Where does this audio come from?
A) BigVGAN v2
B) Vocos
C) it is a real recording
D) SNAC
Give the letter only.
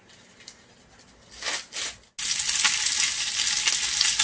C